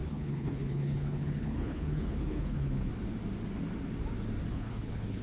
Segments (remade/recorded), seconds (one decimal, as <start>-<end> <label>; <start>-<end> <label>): 0.0-2.9 remade; 2.9-4.5 recorded; 4.5-5.2 remade